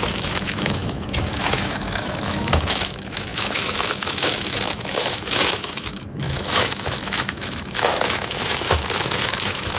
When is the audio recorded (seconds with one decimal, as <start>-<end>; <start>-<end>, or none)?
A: none